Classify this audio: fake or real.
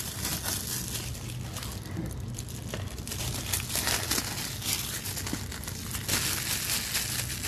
real